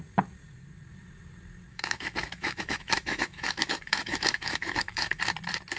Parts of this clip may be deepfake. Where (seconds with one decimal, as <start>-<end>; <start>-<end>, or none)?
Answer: 1.7-5.2